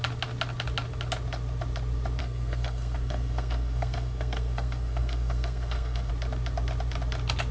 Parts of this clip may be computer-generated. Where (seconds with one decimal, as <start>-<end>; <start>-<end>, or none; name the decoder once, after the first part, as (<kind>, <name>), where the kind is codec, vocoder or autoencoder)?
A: 2.2-6.1 (codec, SNAC)